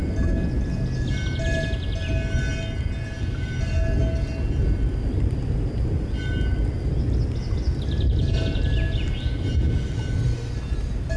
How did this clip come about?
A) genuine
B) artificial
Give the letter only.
A